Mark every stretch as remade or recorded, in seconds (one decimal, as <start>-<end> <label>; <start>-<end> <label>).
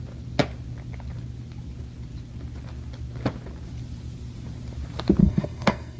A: 0.0-5.2 recorded; 5.2-6.0 remade